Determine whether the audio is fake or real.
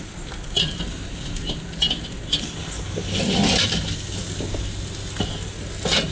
real